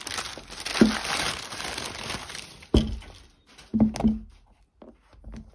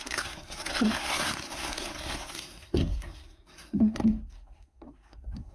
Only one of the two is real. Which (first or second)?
first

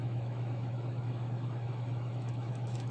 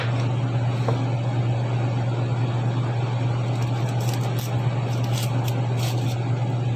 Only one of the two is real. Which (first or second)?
second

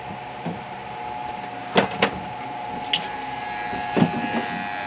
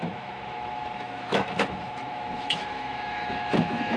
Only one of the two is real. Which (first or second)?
first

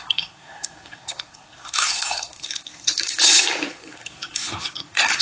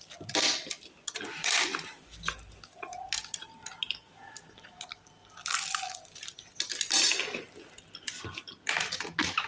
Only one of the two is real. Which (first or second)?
second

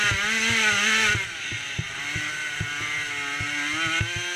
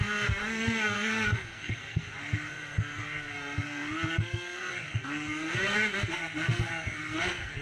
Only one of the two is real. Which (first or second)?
first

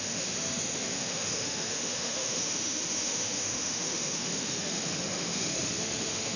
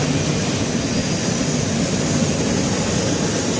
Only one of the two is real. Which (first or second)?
second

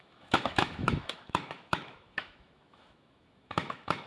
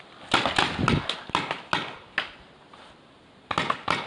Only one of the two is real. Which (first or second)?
second